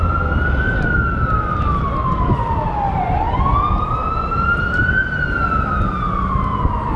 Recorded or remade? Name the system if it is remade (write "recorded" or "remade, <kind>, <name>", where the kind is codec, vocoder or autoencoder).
recorded